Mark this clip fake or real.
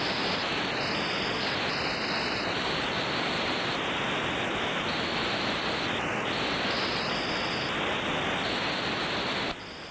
real